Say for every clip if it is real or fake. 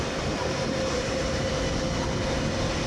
real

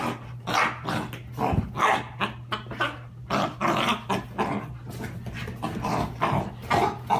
real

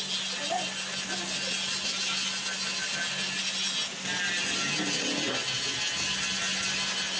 real